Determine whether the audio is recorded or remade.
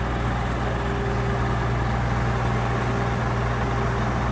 recorded